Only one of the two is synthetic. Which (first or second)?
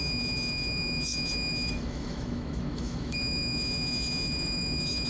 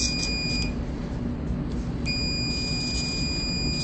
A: first